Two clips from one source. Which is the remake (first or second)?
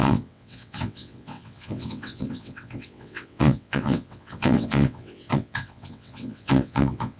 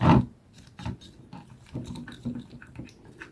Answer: first